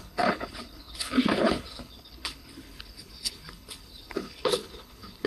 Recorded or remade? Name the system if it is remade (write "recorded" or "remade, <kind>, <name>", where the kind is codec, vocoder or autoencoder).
remade, codec, HILCodec